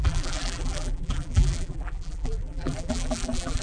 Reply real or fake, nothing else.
fake